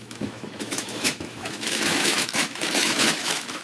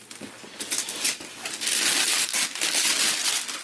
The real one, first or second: second